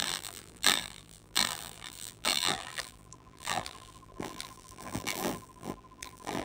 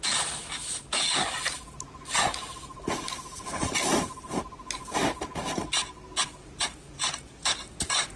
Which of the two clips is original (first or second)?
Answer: second